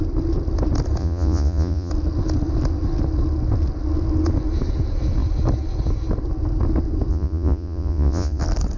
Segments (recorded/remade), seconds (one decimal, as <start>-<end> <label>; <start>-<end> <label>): 0.0-1.0 recorded; 1.0-1.9 remade; 1.9-7.1 recorded; 7.1-8.4 remade; 8.4-8.8 recorded